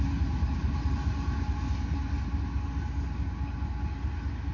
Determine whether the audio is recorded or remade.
recorded